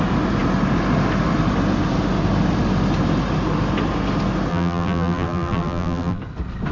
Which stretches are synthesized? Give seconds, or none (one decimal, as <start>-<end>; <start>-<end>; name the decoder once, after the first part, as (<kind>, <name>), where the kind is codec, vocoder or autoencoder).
4.5-6.2 (vocoder, BigVGAN v2)